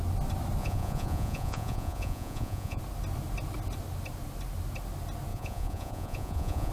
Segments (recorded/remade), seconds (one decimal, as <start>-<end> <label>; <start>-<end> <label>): 0.0-0.6 recorded; 0.6-2.8 remade; 2.8-5.3 recorded; 5.3-6.7 remade